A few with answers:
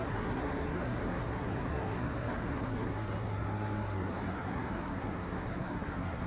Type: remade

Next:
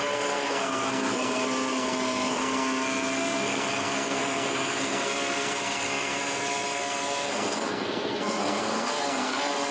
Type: remade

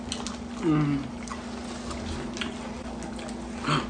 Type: recorded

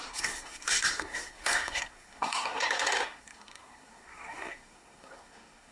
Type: remade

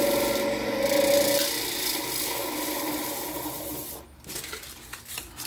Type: recorded